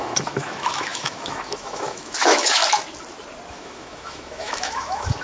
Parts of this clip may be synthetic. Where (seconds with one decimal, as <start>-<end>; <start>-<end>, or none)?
0.0-2.6; 3.5-5.2